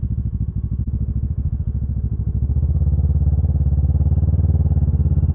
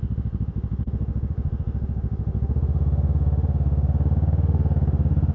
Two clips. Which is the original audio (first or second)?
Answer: first